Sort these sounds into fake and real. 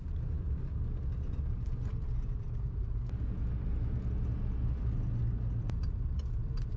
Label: real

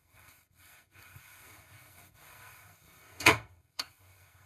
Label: fake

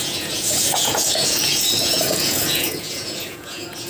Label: fake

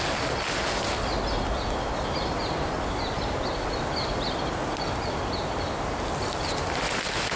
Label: real